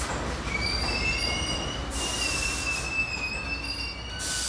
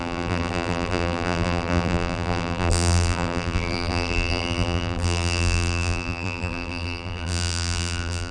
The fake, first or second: second